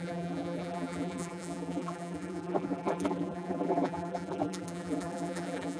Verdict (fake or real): fake